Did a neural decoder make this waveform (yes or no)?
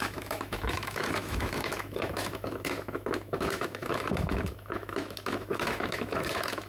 yes